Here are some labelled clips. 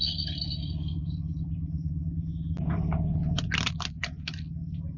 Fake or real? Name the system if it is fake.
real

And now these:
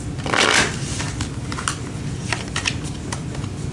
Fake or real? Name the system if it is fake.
real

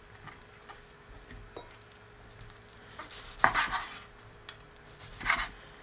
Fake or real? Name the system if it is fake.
real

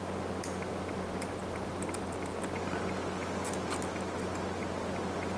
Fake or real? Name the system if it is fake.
real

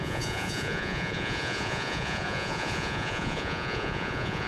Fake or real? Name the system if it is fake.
fake, vocoder, Vocos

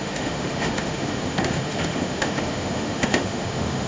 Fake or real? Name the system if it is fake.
fake, autoencoder, DAC-VAE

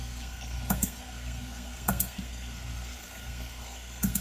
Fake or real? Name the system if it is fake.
fake, codec, SNAC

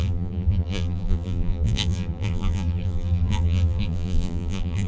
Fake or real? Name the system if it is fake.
fake, vocoder, BigVGAN v2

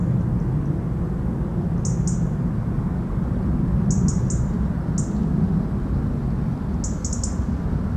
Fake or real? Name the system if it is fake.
real